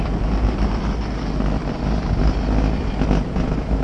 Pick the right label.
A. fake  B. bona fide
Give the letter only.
B